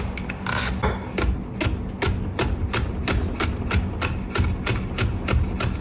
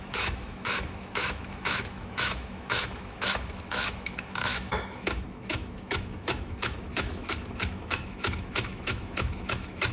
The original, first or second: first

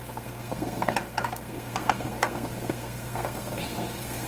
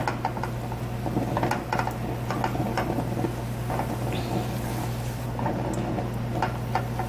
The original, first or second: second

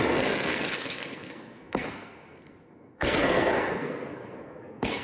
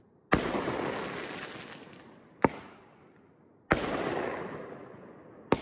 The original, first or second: second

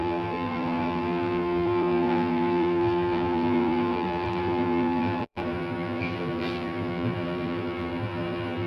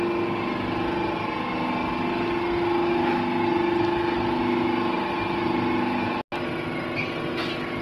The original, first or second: second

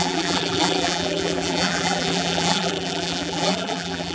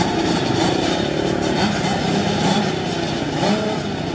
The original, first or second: second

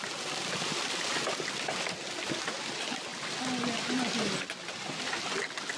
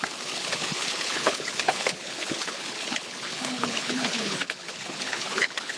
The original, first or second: first